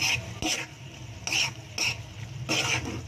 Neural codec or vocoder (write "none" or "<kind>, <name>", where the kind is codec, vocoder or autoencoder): none